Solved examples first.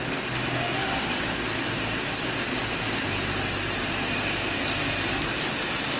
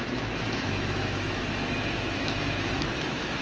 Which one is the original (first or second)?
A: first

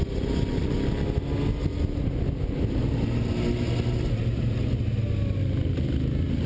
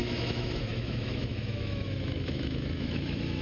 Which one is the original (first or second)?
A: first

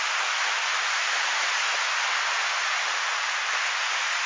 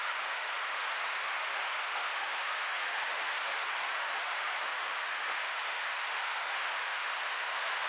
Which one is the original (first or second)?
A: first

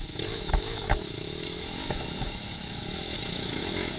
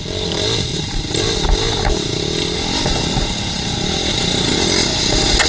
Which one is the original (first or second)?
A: second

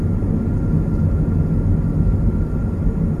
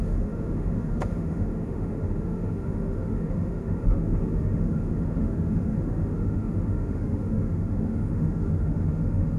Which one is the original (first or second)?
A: first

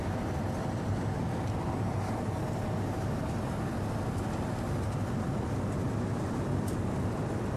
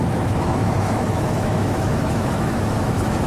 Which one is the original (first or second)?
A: first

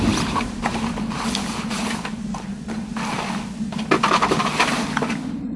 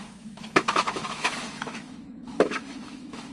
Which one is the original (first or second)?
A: first